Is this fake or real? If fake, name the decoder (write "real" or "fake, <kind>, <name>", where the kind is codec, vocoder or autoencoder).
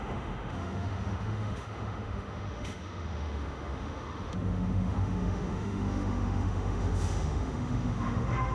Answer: fake, autoencoder, DAC-VAE